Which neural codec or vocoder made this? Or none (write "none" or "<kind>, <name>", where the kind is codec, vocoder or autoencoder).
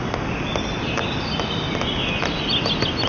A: none